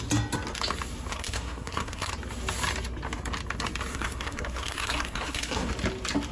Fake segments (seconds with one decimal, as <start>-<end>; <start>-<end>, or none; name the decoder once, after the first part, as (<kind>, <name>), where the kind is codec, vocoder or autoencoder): 1.1-2.1 (codec, SNAC); 3.9-5.7